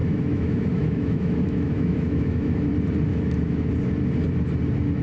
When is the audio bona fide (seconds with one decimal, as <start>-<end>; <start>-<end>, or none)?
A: 2.7-3.1; 3.7-5.0